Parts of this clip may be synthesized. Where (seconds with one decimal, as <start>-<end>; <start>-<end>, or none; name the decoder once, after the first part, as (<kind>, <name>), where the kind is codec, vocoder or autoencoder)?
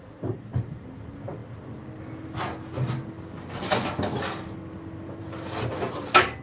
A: none